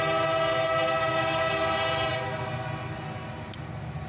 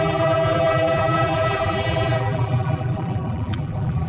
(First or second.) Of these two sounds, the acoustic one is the first